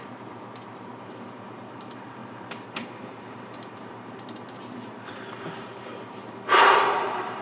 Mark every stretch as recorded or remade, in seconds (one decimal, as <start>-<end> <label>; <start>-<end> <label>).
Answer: 0.0-7.4 remade